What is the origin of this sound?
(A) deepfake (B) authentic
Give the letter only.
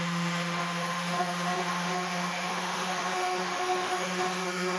A